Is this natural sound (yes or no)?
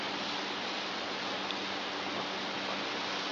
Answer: yes